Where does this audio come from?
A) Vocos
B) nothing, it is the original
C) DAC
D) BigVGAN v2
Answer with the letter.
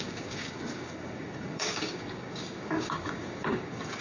C